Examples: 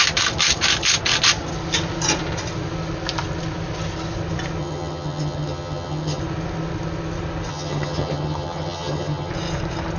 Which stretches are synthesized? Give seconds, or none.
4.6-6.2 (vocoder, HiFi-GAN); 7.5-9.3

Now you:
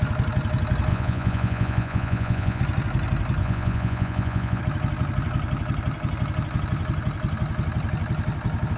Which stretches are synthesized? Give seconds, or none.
0.9-2.6 (vocoder, Vocos); 3.4-4.6

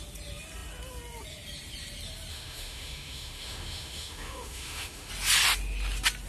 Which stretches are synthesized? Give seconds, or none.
2.3-5.1 (autoencoder, DAC-VAE)

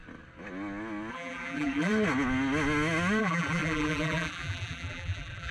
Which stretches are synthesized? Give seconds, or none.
1.1-1.9 (vocoder, BigVGAN v2); 3.2-5.5

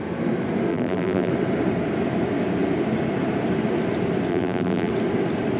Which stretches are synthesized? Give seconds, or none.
0.7-1.3 (vocoder, BigVGAN v2); 4.3-4.9